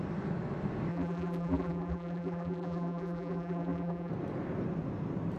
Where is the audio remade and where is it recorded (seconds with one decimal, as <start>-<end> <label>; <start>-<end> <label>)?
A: 0.0-0.9 recorded; 0.9-4.1 remade; 4.1-5.4 recorded